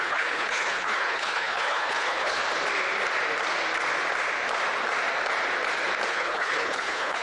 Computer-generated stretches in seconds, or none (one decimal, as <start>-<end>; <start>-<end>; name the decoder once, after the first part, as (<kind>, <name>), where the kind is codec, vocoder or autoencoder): 0.0-2.4 (codec, HILCodec); 6.1-7.2